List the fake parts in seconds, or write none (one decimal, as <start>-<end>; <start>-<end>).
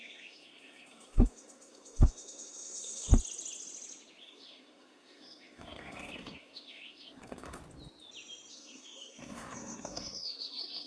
0.0-3.1; 4.2-7.6; 8.5-10.9